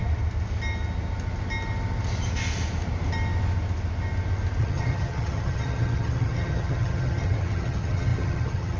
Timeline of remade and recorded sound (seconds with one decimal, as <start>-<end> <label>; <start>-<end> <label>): 0.0-4.6 recorded; 4.6-8.8 remade